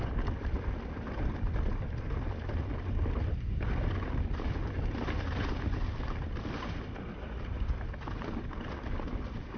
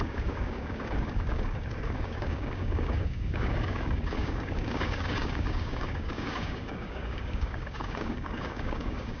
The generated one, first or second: second